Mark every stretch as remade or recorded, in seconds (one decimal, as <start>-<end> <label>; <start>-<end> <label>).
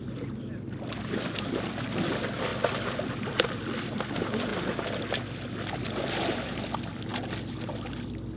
0.0-8.4 recorded